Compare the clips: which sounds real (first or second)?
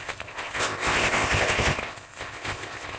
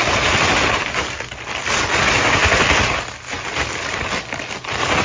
second